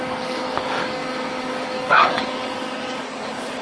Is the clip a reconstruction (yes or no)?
yes